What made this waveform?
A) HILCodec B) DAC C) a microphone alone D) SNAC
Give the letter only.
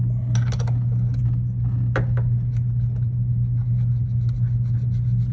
C